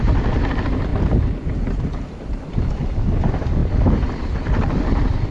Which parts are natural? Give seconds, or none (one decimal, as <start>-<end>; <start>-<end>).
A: 0.9-2.5; 3.6-4.6